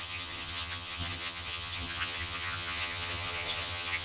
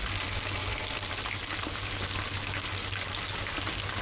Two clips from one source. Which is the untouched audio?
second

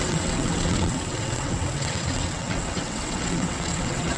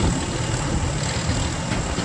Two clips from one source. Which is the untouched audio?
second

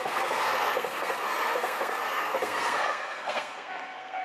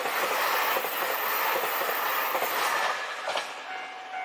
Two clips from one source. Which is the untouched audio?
second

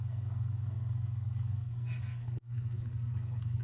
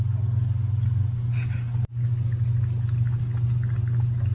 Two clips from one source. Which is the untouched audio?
second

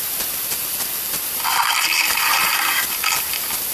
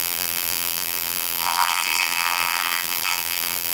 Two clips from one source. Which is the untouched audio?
first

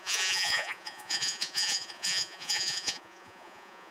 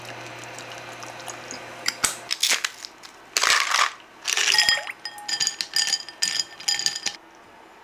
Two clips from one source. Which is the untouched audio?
second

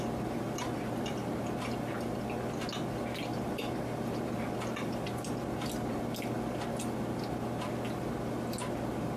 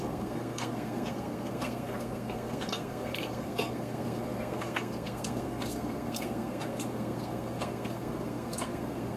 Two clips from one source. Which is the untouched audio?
first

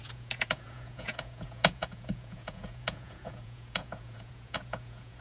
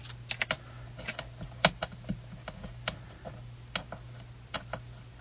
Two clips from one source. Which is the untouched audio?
second